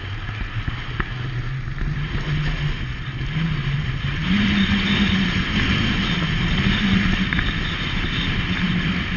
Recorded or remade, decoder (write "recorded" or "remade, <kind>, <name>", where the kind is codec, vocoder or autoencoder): recorded